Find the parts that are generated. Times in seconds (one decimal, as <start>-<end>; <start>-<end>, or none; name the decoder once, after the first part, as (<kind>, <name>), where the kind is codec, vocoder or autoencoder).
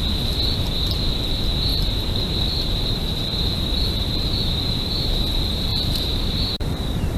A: 1.7-5.2 (vocoder, BigVGAN v2); 5.7-7.2